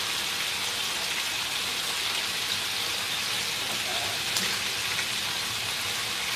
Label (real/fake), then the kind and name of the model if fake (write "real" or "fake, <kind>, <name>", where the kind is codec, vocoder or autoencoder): real